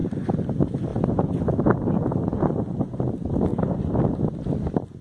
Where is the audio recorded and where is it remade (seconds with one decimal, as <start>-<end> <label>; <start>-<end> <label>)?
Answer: 0.0-0.5 remade; 0.5-5.0 recorded